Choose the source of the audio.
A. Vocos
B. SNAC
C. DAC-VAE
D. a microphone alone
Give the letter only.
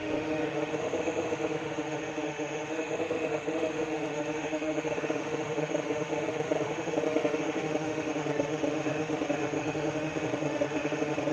C